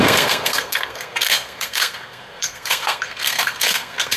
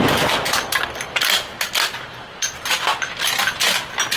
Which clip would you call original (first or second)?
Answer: second